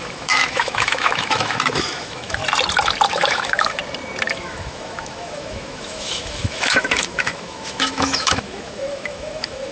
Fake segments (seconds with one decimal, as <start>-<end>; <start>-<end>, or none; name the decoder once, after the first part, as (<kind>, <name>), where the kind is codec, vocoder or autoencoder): 0.0-2.4 (autoencoder, DAC-VAE); 3.1-3.8; 4.3-9.7